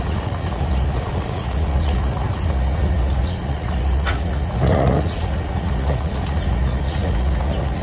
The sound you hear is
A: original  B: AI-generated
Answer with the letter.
B